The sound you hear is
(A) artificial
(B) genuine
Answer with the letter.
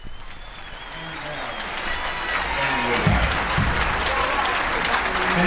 B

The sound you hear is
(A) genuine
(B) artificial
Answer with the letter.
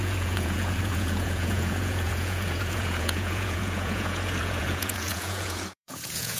B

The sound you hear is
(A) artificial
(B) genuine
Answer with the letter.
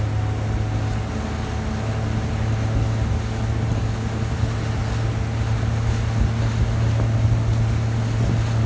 B